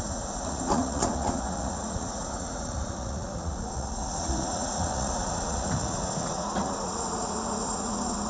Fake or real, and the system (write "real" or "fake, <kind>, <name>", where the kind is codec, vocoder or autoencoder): fake, vocoder, Vocos